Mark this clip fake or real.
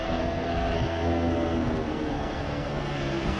fake